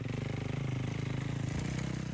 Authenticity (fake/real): real